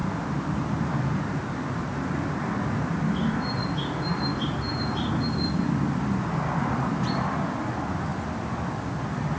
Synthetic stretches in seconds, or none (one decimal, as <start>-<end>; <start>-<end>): none